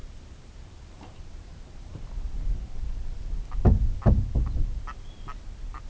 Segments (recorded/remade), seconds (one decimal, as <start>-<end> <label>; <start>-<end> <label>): 0.0-2.0 remade; 2.0-5.9 recorded